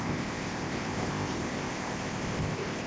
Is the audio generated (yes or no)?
yes